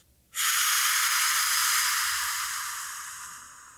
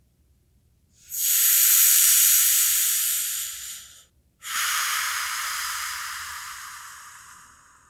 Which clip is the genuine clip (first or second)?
first